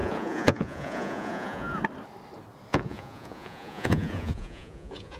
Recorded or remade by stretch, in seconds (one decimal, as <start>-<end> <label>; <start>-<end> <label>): 0.0-1.8 remade; 1.8-2.7 recorded; 2.7-5.2 remade